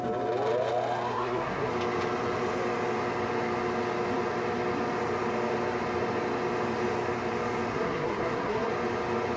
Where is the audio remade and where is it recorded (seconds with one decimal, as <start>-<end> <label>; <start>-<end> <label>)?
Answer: 0.0-1.1 recorded; 1.1-1.7 remade; 1.7-7.7 recorded; 7.7-8.7 remade; 8.7-9.4 recorded